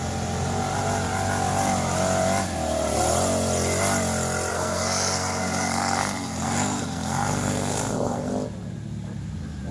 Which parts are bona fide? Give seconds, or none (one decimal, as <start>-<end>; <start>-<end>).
0.0-4.5; 8.3-9.7

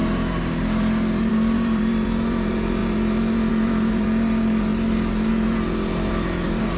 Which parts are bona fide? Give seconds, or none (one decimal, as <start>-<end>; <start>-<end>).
none

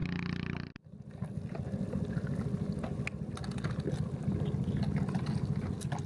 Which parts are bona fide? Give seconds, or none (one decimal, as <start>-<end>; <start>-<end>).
0.0-6.1

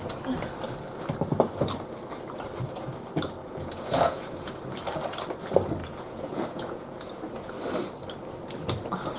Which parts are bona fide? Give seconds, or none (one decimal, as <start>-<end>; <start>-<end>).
0.0-3.4; 4.5-5.8; 7.5-9.2

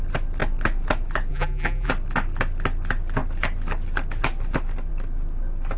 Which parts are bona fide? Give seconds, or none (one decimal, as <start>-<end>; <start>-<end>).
0.0-1.3; 1.9-5.8

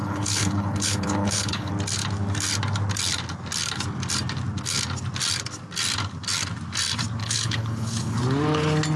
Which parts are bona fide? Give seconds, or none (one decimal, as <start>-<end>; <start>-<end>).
1.7-7.2; 8.2-9.0